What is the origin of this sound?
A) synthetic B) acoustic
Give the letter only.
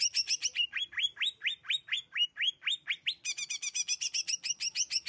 B